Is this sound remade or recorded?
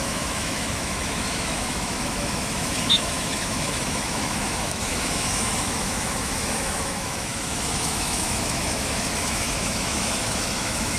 remade